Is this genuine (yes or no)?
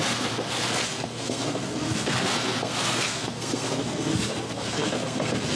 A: no